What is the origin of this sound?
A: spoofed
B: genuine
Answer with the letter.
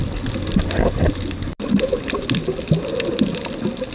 B